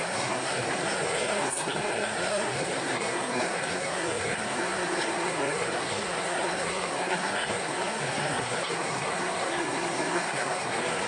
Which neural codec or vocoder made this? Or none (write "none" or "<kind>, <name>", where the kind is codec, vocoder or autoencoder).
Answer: codec, SNAC